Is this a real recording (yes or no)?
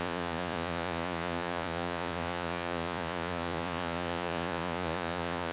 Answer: no